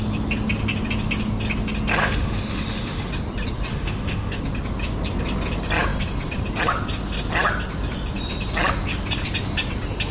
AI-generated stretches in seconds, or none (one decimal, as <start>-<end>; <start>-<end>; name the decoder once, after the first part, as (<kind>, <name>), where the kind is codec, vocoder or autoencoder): 2.0-3.1 (autoencoder, DAC-VAE); 3.7-4.4